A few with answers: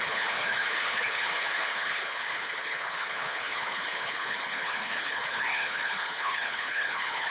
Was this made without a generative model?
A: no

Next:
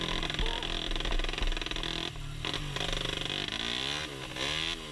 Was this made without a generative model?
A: yes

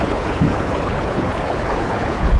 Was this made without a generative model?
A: no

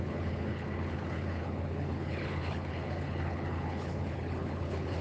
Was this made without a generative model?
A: no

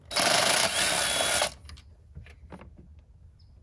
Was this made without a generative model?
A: yes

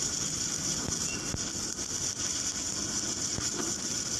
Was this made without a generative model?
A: yes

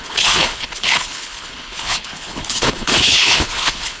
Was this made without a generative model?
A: no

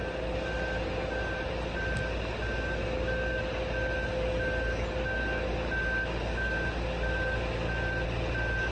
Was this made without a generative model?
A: yes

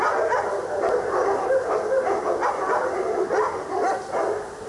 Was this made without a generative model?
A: yes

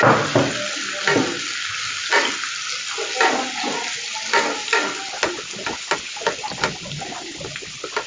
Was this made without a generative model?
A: yes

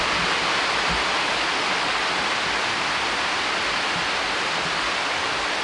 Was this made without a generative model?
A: yes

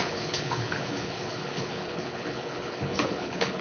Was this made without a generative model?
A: no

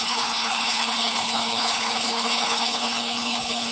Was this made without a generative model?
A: no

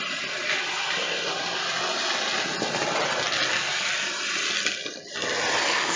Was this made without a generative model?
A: yes